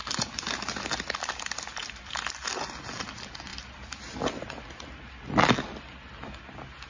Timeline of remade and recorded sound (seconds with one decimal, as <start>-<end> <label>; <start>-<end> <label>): 0.0-0.7 remade; 0.7-6.9 recorded